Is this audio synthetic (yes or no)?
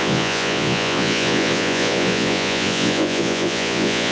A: yes